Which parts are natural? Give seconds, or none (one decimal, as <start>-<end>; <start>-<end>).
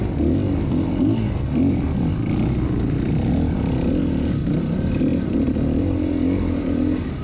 0.0-7.2